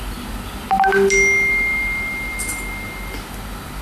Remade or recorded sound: recorded